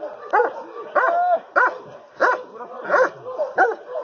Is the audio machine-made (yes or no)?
no